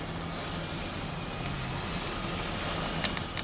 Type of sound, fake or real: real